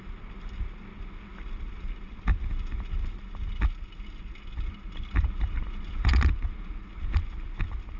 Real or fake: real